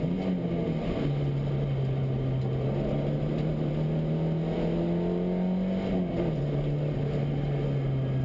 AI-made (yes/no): no